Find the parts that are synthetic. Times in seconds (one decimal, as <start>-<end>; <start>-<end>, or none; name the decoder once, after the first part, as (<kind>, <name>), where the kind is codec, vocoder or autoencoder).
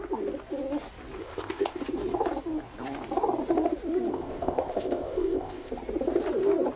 1.2-1.8 (codec, ZipCodec); 4.1-5.7